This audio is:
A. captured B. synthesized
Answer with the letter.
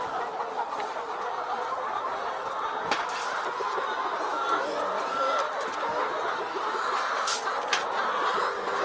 A